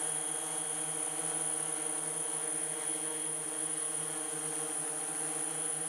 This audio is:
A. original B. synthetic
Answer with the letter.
A